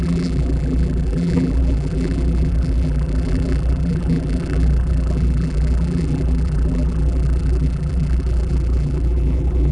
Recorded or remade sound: remade